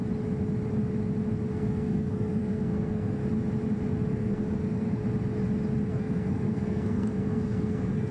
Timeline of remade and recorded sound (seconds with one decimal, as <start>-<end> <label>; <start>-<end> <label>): 0.0-1.5 recorded; 1.5-3.2 remade; 3.2-4.1 recorded; 4.1-5.0 remade; 5.0-5.9 recorded; 5.9-8.1 remade